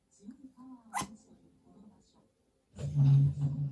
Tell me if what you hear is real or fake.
real